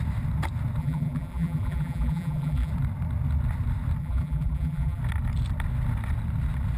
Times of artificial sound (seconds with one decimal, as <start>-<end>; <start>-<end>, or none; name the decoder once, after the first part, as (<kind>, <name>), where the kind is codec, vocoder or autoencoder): 0.8-2.7 (vocoder, BigVGAN v2); 4.0-5.0